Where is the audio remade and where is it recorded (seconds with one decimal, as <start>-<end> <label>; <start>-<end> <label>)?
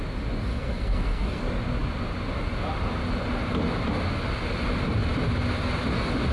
0.0-0.5 recorded; 0.5-1.4 remade; 1.4-6.3 recorded